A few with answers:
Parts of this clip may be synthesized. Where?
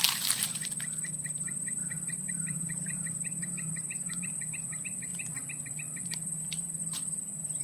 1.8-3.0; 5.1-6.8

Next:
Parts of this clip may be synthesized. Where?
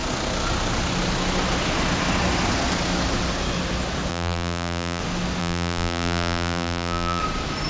4.1-5.0; 5.4-7.2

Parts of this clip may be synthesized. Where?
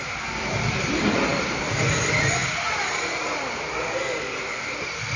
none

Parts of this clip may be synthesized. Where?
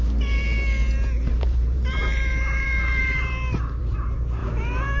1.3-4.4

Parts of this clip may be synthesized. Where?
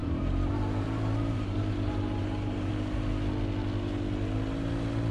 0.0-2.7